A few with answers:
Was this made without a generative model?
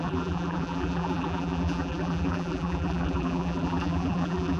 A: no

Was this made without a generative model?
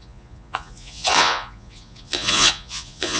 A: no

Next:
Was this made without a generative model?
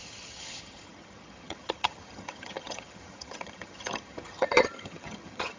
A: no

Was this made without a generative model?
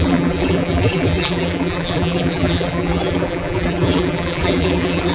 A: no